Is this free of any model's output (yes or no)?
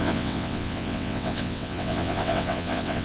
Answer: no